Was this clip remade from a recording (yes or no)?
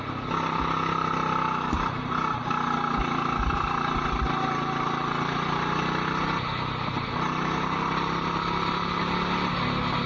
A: no